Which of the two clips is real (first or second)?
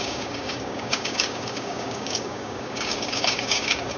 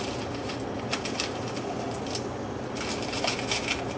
second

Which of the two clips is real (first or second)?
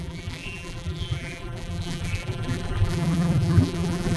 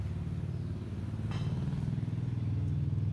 second